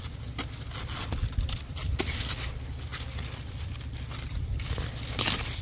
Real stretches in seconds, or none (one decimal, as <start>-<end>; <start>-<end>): 0.0-1.0; 2.0-2.9; 4.3-5.6